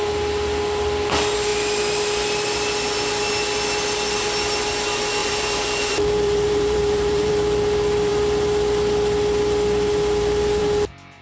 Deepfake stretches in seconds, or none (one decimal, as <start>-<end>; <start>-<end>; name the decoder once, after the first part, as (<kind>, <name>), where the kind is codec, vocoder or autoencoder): 5.2-7.3 (vocoder, BigVGAN v2)